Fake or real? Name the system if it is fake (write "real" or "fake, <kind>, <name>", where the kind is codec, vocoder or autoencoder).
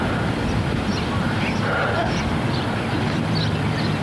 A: real